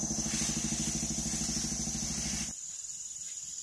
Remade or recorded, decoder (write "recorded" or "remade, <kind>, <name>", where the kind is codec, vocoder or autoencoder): recorded